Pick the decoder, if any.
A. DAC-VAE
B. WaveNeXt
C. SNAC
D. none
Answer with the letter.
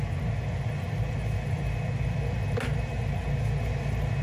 D